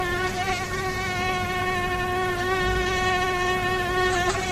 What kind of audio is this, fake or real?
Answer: real